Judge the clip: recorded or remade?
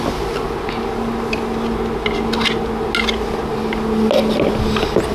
recorded